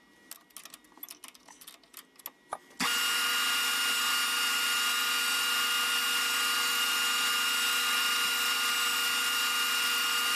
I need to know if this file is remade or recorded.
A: recorded